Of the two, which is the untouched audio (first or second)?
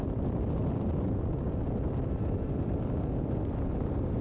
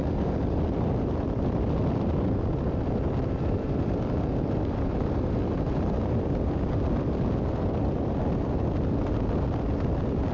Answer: first